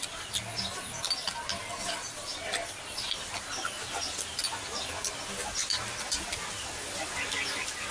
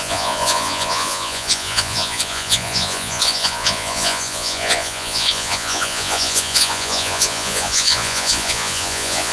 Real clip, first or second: first